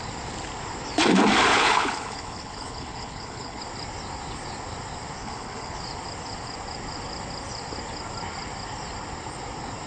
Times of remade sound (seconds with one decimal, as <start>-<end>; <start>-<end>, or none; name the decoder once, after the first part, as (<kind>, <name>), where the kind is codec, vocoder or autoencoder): 1.5-3.6 (codec, HILCodec); 5.2-5.8